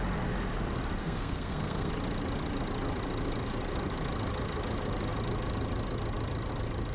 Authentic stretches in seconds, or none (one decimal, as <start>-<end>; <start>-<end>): 0.0-1.0; 1.9-6.9